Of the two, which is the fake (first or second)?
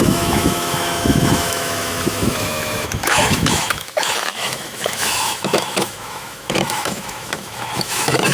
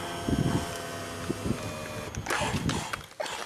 first